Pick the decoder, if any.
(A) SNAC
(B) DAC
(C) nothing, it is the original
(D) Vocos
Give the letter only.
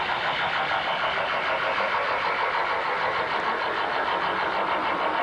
C